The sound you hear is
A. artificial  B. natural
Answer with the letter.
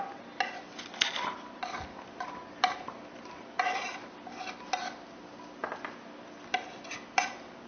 B